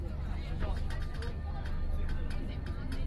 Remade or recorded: recorded